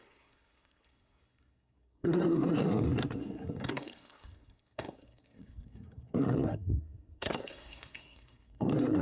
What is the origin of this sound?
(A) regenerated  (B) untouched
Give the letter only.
A